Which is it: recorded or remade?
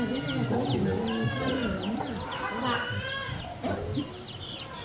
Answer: recorded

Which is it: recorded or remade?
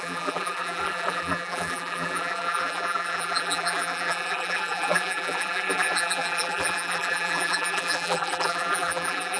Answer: remade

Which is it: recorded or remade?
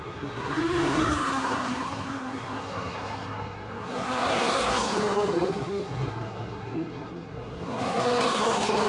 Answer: remade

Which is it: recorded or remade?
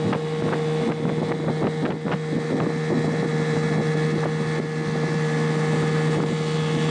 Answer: recorded